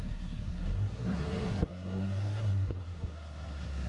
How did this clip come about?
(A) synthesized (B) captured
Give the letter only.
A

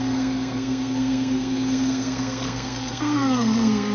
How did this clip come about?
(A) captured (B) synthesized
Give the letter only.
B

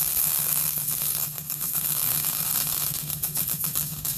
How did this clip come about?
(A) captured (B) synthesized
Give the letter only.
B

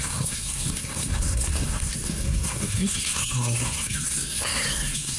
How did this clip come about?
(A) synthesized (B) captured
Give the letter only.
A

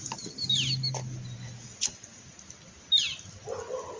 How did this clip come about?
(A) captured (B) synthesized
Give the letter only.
A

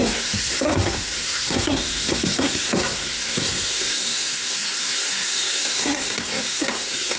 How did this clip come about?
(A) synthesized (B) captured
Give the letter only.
A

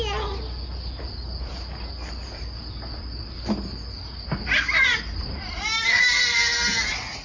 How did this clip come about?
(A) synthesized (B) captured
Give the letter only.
B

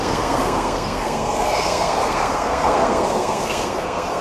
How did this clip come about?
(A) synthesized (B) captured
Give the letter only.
A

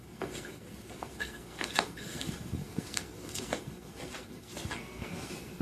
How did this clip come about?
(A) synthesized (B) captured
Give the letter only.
A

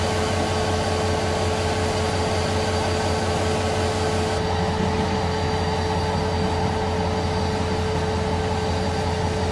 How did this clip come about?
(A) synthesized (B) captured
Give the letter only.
B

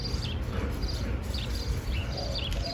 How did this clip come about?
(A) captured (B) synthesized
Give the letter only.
A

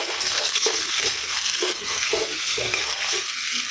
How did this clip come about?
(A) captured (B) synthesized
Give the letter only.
B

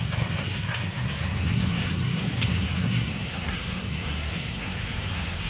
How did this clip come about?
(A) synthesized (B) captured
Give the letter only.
A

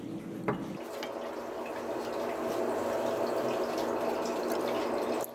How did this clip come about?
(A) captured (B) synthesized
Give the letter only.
A